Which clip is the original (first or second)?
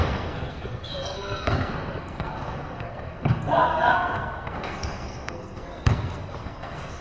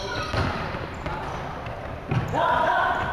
second